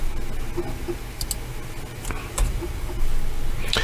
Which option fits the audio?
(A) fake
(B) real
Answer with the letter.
B